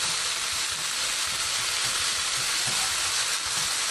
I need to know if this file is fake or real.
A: real